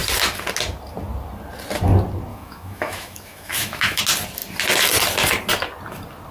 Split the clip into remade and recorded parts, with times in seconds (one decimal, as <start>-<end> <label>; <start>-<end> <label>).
0.0-2.3 recorded; 2.3-4.0 remade; 4.0-6.3 recorded